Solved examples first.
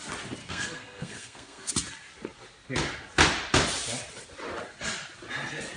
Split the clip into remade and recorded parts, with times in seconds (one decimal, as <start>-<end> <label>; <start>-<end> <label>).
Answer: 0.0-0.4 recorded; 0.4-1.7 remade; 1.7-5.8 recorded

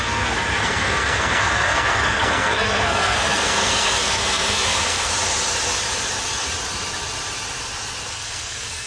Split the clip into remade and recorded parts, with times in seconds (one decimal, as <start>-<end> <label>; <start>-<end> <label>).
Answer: 0.0-5.1 remade; 5.1-8.1 recorded; 8.1-8.9 remade

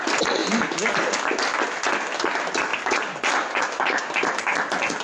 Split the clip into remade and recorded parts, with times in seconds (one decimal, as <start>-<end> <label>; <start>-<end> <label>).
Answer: 0.0-5.0 recorded

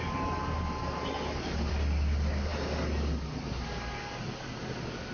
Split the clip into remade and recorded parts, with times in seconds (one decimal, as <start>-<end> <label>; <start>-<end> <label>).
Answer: 0.0-5.1 recorded

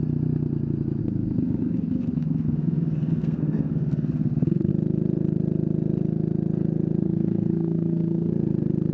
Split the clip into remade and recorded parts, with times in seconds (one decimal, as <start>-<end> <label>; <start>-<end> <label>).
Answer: 0.0-1.0 recorded; 1.0-4.7 remade; 4.7-7.0 recorded; 7.0-8.3 remade; 8.3-8.9 recorded